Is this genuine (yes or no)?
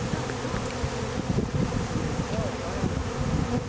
yes